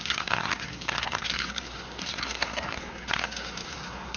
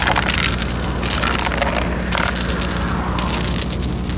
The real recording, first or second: second